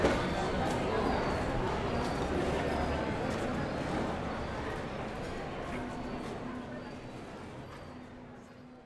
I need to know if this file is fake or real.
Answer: real